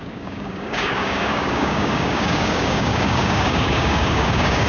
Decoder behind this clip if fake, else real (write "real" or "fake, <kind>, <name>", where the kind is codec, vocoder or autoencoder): fake, codec, DAC